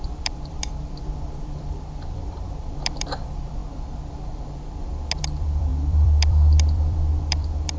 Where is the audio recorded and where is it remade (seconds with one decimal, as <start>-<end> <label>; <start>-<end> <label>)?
0.0-3.6 remade; 3.6-5.2 recorded; 5.2-7.8 remade